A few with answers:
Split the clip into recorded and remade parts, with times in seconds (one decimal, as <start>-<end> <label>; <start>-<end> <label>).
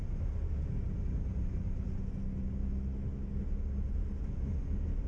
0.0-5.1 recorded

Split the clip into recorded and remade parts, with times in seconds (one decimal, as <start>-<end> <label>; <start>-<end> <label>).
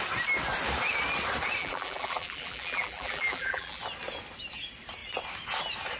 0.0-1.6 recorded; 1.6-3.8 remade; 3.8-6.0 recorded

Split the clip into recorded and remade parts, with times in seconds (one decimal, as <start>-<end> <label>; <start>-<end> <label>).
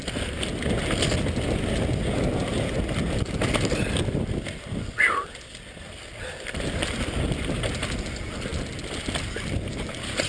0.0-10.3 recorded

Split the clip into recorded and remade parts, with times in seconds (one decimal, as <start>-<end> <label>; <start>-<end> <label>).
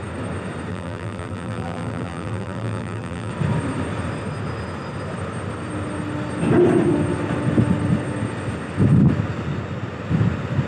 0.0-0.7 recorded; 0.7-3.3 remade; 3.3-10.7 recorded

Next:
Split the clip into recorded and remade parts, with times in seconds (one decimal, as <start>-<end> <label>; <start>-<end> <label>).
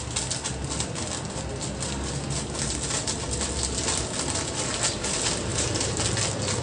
0.0-5.5 recorded; 5.5-6.0 remade; 6.0-6.6 recorded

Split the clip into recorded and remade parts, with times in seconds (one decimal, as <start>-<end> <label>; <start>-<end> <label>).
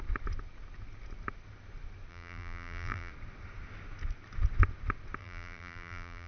0.0-2.1 recorded; 2.1-3.1 remade; 3.1-5.2 recorded; 5.2-6.3 remade